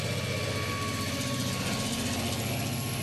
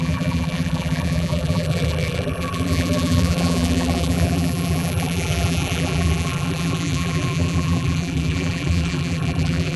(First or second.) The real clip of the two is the first